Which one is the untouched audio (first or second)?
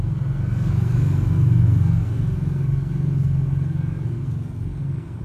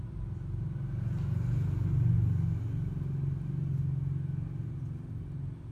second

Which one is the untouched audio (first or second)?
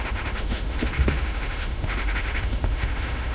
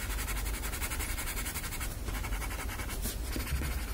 second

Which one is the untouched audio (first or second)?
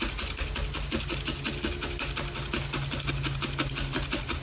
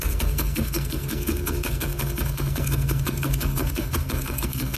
first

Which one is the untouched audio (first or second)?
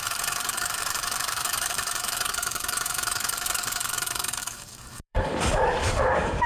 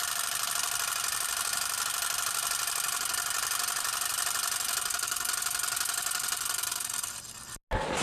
second